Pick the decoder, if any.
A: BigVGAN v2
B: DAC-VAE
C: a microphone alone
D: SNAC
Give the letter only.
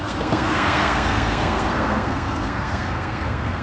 D